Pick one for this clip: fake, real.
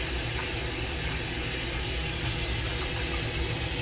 real